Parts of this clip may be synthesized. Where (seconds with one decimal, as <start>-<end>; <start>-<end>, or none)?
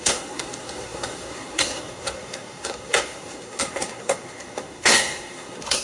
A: 0.0-5.8